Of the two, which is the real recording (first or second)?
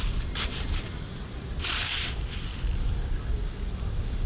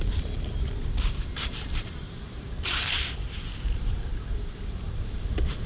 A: first